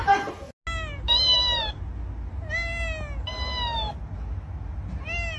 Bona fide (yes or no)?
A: yes